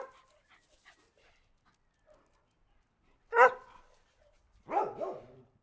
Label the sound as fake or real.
real